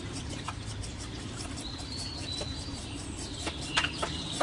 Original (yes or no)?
no